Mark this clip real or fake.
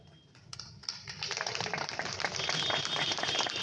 fake